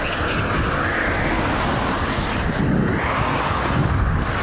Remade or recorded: recorded